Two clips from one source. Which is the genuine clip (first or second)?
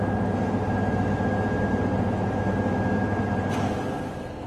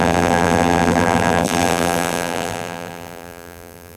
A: first